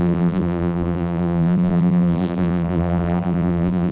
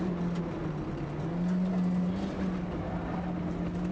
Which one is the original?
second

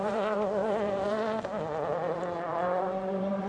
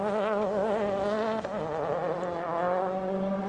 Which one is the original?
second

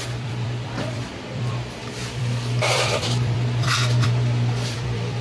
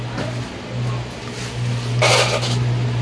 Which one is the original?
second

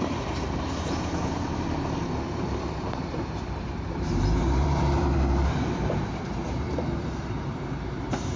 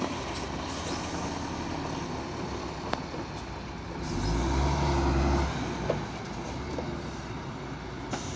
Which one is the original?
second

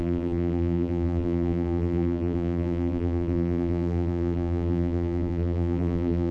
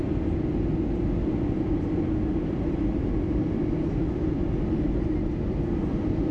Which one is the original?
second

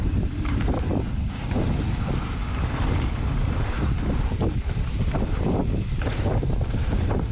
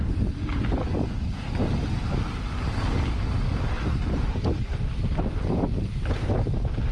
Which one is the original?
second